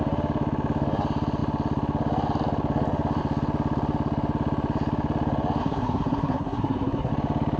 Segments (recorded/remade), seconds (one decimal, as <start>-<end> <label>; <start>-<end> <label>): 0.0-5.6 recorded; 5.6-7.1 remade; 7.1-7.6 recorded